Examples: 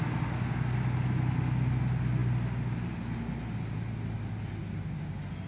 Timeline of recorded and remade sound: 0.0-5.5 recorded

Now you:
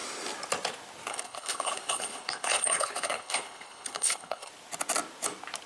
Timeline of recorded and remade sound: 0.0-1.1 recorded; 1.1-4.5 remade; 4.5-5.7 recorded

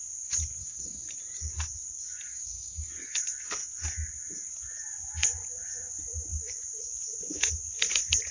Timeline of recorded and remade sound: 0.0-0.6 recorded; 0.6-1.1 remade; 1.1-2.3 recorded; 2.3-2.9 remade; 2.9-8.3 recorded

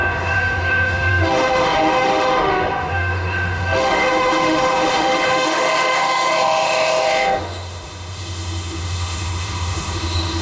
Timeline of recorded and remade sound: 0.0-10.4 remade

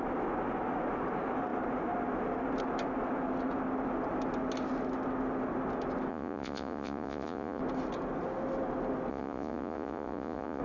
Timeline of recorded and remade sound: 0.0-6.1 recorded; 6.1-7.6 remade; 7.6-9.1 recorded; 9.1-10.6 remade

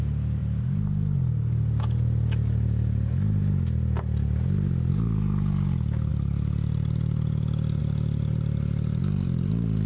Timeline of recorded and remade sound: 0.0-9.9 recorded

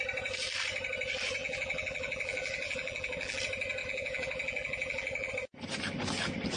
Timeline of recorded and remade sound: 0.0-1.4 recorded; 1.4-3.4 remade; 3.4-3.8 recorded; 3.8-5.3 remade; 5.3-6.6 recorded